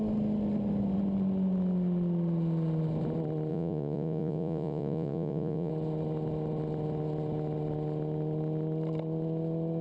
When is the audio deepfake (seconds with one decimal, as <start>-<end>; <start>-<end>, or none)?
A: 3.5-5.7